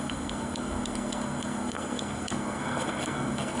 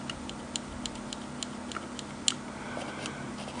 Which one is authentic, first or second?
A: second